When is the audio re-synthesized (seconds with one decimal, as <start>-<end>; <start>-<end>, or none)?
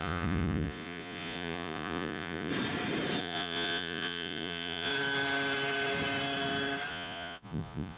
0.0-2.5; 3.2-4.9; 6.9-8.0